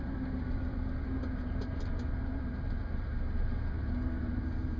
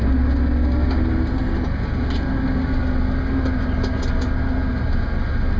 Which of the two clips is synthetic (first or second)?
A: first